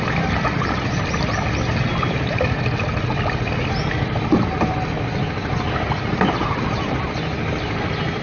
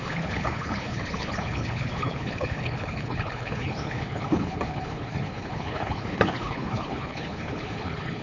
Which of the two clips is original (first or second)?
first